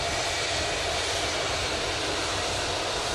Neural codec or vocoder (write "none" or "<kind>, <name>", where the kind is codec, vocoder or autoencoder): none